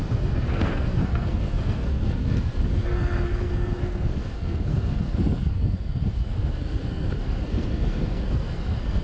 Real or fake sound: fake